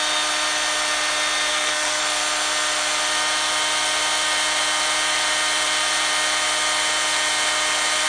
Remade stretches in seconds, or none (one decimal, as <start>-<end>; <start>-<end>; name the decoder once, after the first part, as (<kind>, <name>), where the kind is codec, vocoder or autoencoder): 1.5-2.0 (codec, SNAC)